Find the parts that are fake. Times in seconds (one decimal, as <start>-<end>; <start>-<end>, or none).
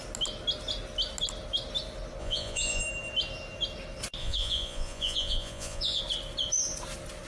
2.2-2.8; 4.2-6.0